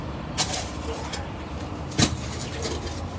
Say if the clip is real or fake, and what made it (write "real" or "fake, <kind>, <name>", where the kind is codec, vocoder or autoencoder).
fake, vocoder, BigVGAN v2